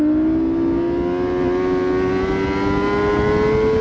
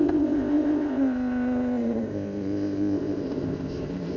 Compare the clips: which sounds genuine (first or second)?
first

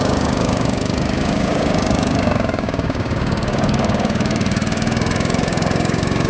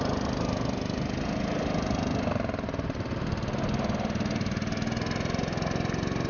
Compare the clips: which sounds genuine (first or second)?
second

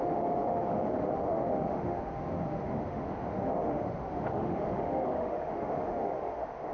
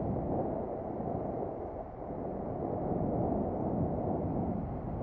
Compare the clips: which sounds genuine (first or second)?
second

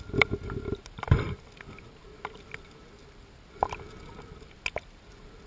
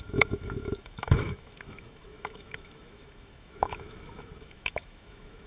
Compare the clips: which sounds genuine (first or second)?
first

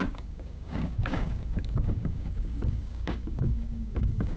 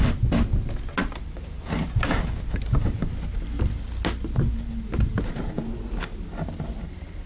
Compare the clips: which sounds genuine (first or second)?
second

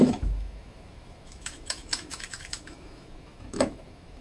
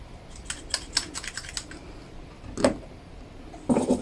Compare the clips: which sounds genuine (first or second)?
second